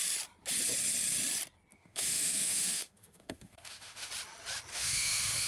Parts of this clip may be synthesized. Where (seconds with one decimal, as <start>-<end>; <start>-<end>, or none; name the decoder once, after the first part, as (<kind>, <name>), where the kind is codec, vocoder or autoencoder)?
1.7-4.1 (autoencoder, DAC-VAE); 4.7-5.5